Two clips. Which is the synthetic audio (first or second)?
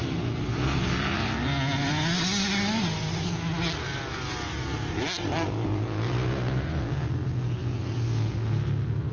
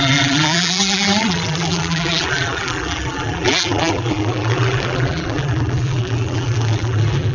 second